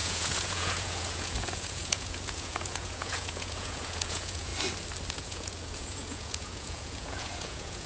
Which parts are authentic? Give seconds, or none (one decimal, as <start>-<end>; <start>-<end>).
4.5-5.1